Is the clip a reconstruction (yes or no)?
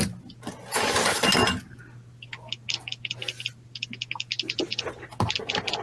no